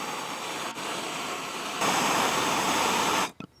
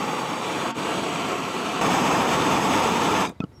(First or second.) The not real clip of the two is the second